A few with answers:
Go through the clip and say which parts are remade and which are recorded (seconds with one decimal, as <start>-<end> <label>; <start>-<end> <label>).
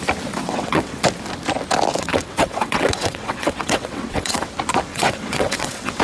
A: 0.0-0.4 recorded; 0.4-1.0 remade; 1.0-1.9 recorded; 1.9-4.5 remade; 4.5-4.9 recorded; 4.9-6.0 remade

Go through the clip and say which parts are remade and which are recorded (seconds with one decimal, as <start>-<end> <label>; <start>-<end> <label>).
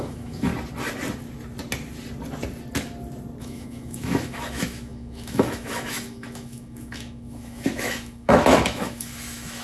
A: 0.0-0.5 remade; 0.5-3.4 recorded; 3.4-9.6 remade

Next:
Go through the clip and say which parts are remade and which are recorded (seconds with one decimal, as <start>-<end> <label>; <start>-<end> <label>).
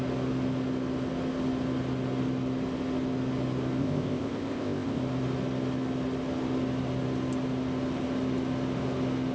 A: 0.0-3.8 recorded; 3.8-5.0 remade; 5.0-9.3 recorded